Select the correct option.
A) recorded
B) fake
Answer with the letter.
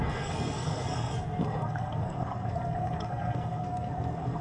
B